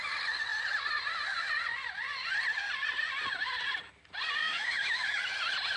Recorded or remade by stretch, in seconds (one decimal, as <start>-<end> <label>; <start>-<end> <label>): 0.0-4.4 recorded; 4.4-5.2 remade; 5.2-5.8 recorded